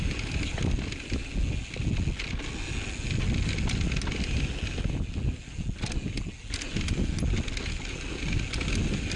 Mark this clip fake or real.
real